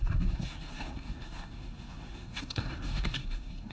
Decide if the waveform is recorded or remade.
remade